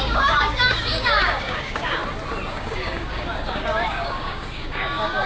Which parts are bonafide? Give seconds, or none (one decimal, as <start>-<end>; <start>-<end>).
2.0-2.5